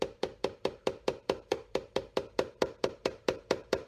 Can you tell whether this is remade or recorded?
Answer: remade